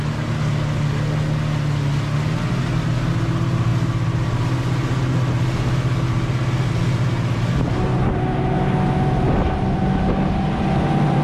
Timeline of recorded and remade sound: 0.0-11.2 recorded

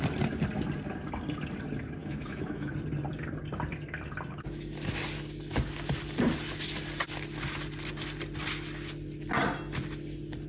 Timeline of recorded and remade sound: 0.0-2.0 recorded; 2.0-2.7 remade; 2.7-10.5 recorded

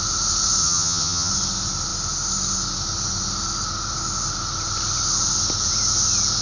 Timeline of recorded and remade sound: 0.0-0.6 recorded; 0.6-1.3 remade; 1.3-6.4 recorded

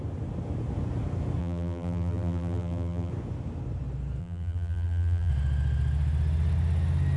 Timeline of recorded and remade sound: 0.0-1.4 recorded; 1.4-3.1 remade; 3.1-4.2 recorded; 4.2-5.3 remade; 5.3-7.2 recorded

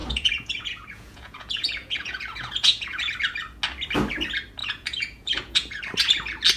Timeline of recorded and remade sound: 0.0-3.0 remade; 3.0-4.6 recorded; 4.6-5.8 remade; 5.8-6.6 recorded